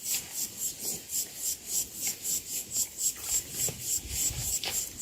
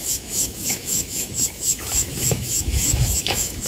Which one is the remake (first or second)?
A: second